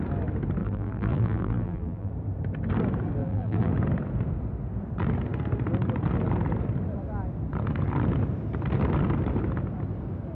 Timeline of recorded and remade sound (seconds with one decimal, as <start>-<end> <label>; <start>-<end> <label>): 0.0-0.6 recorded; 0.6-2.1 remade; 2.1-3.2 recorded; 3.2-3.7 remade; 3.7-10.3 recorded